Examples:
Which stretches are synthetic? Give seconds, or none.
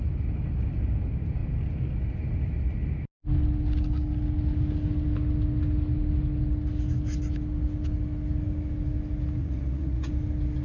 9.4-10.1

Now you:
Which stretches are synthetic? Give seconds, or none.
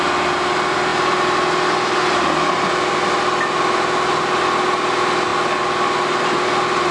none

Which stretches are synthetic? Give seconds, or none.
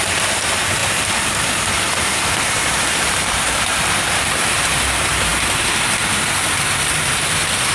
0.8-4.8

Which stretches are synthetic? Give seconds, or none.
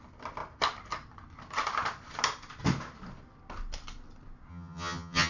4.5-5.3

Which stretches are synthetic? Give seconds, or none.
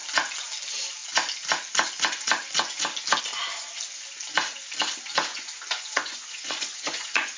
5.3-7.4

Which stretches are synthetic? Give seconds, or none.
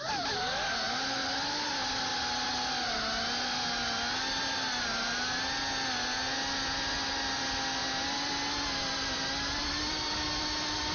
none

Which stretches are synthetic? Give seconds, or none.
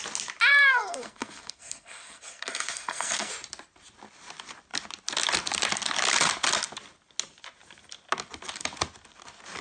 0.5-3.3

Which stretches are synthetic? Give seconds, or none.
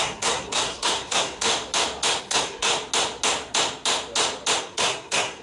0.0-1.5; 2.2-2.7; 4.6-5.4